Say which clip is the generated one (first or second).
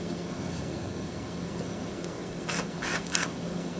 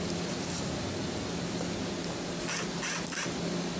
first